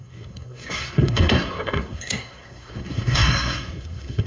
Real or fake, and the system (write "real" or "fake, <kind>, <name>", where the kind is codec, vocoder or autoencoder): fake, codec, SNAC